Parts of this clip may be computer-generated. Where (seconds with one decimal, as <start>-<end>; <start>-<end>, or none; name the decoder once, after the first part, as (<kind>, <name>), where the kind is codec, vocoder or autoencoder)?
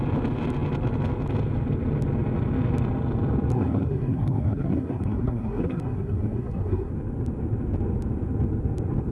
3.5-6.9 (codec, SNAC)